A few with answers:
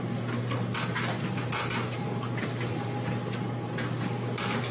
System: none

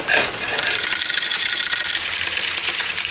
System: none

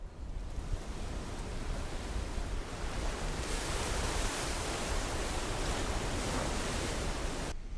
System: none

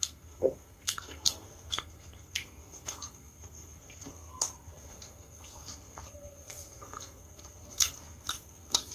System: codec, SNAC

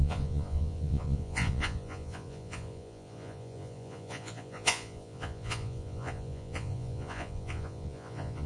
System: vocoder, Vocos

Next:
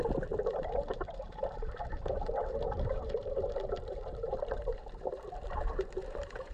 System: vocoder, BigVGAN v2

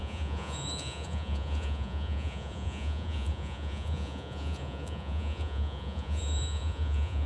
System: vocoder, Vocos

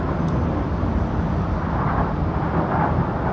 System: none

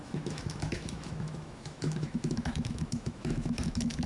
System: autoencoder, DAC-VAE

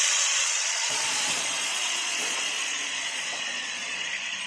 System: vocoder, Vocos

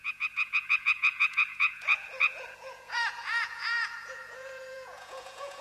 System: vocoder, Vocos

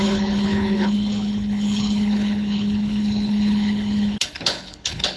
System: codec, HILCodec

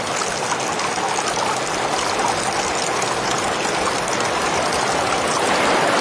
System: none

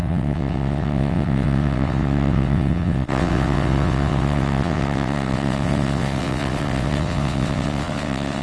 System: vocoder, WaveNeXt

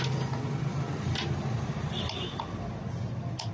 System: none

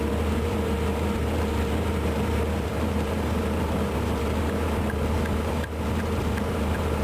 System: vocoder, BigVGAN v2